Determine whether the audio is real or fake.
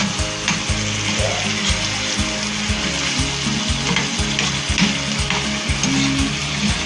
real